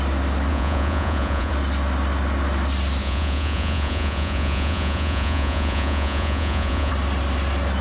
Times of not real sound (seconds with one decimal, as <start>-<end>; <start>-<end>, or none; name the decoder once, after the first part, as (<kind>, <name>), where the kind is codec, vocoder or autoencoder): 0.5-1.5 (vocoder, Vocos); 3.0-6.9